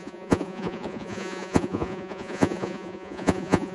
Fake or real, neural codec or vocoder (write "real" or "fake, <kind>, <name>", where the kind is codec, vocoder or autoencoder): fake, vocoder, Vocos